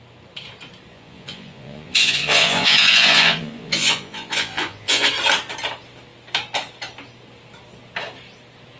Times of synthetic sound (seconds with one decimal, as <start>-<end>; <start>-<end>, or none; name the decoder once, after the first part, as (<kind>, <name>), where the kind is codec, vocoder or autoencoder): 0.9-5.1 (vocoder, Vocos)